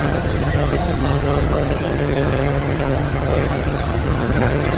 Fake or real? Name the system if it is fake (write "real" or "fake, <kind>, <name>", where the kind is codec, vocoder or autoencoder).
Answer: fake, vocoder, HiFi-GAN